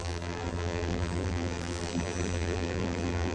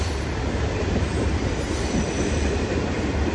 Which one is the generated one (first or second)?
first